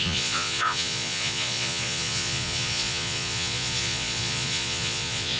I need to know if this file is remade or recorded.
remade